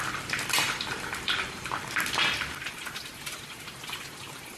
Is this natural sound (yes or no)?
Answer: no